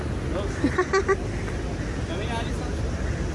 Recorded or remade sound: recorded